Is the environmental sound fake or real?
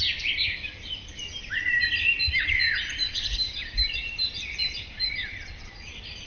fake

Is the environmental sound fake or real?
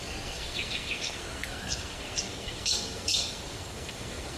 fake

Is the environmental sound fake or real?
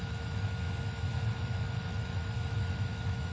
fake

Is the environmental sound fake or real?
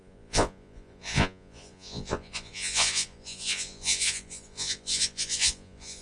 fake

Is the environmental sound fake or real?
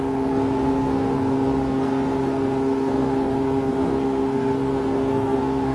fake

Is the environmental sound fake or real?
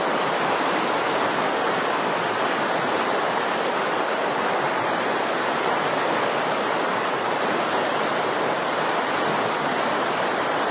real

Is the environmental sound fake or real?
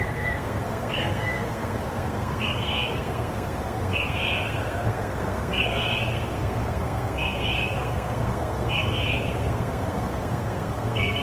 fake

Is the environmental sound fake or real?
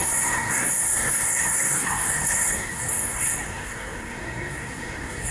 fake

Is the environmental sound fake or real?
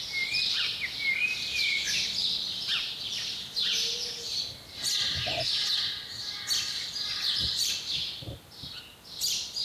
real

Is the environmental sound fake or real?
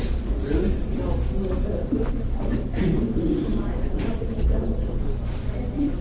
fake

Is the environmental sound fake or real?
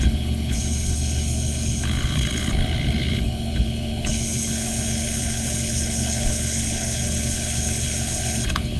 fake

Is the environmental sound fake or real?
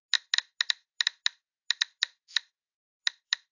real